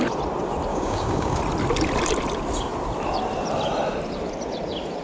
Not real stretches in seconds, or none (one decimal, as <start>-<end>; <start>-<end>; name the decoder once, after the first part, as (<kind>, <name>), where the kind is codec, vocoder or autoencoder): 0.7-1.4 (codec, DAC)